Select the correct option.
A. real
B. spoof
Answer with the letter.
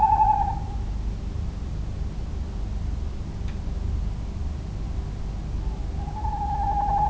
A